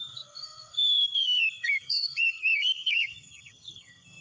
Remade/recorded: remade